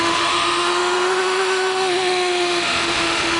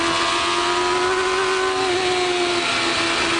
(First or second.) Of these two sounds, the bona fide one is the second